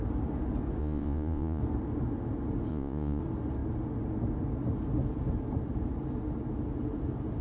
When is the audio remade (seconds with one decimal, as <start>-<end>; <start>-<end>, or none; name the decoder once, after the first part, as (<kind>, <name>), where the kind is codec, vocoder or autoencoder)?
0.8-1.6 (vocoder, Vocos); 2.7-3.2